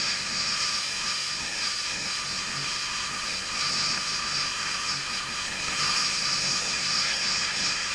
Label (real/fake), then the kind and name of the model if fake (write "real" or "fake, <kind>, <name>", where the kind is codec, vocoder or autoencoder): fake, codec, SNAC